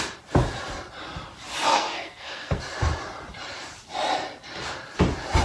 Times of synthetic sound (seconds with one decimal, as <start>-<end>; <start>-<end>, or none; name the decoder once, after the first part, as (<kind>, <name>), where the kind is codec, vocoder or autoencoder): 1.7-2.6 (codec, SNAC)